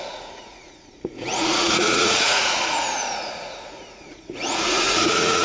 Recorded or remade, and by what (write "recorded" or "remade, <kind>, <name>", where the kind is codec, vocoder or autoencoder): remade, vocoder, Vocos